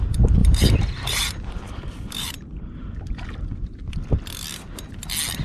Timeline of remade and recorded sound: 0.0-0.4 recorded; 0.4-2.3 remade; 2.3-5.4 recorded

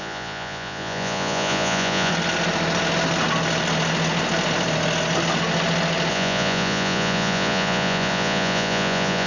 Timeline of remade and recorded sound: 0.0-2.1 remade; 2.1-6.1 recorded; 6.1-9.3 remade